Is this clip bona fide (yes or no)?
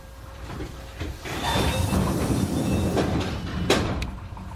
no